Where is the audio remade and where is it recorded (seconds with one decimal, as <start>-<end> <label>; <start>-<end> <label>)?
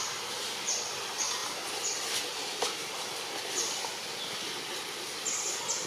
0.0-5.9 recorded